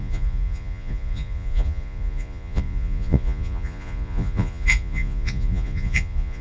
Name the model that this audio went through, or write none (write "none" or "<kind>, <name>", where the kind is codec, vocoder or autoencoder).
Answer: vocoder, Vocos